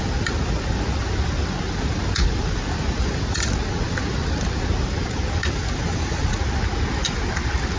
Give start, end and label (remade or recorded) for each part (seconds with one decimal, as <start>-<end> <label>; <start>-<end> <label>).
0.0-7.8 recorded